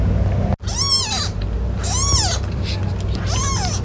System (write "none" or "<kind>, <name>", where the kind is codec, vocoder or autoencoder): none